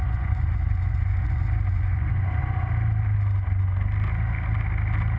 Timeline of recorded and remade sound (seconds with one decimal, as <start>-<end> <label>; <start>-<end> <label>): 0.0-2.4 remade; 2.4-5.2 recorded